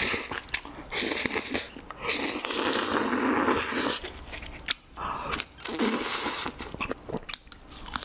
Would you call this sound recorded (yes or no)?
yes